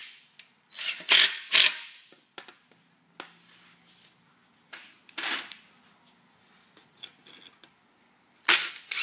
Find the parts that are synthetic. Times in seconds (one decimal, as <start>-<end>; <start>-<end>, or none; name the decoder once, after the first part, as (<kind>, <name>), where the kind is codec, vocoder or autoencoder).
none